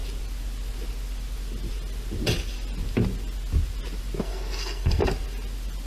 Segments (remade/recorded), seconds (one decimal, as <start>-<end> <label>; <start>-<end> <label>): 0.0-4.2 recorded; 4.2-5.0 remade; 5.0-5.9 recorded